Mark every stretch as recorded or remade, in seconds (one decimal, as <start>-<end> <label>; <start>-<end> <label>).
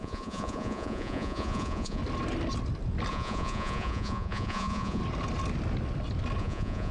0.0-2.0 remade; 2.0-3.1 recorded; 3.1-5.0 remade; 5.0-6.4 recorded; 6.4-6.9 remade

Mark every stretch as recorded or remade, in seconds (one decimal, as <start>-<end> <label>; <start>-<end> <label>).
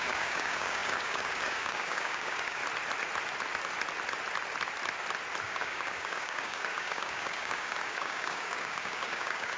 0.0-2.6 remade; 2.6-5.4 recorded; 5.4-9.6 remade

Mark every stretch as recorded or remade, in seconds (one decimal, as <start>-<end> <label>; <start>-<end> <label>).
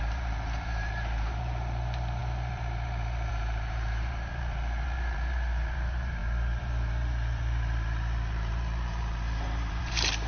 0.0-10.3 remade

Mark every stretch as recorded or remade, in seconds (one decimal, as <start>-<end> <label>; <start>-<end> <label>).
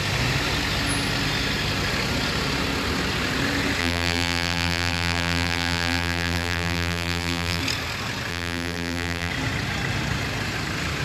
0.0-3.8 recorded; 3.8-7.6 remade; 7.6-8.3 recorded; 8.3-9.3 remade; 9.3-11.0 recorded